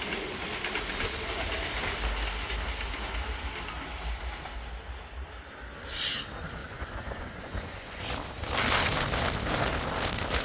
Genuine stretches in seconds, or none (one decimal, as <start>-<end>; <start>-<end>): 0.0-6.6; 8.0-10.4